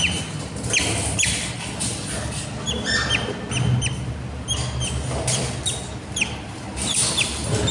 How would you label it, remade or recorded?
recorded